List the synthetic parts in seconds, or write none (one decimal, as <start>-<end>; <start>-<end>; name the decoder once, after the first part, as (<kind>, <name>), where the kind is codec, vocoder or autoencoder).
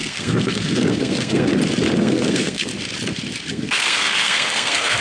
0.0-1.5 (codec, SNAC); 2.0-2.7; 3.5-5.0